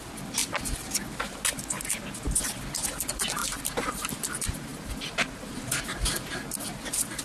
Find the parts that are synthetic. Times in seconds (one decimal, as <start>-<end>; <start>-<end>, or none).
3.4-4.3; 4.7-5.3